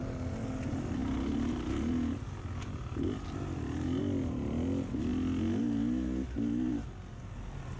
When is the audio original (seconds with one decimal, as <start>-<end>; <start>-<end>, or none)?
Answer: 0.0-7.8